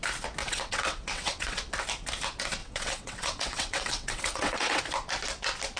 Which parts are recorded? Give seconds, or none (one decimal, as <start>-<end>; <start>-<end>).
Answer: 0.0-0.4; 1.6-2.6; 4.8-5.8